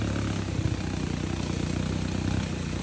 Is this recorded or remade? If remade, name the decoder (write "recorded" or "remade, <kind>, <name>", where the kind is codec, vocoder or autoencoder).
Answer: recorded